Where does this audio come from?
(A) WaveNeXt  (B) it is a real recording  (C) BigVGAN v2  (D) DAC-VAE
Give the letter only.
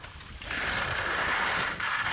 C